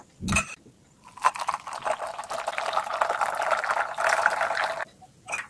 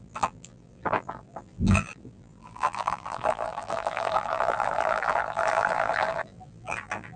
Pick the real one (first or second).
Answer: first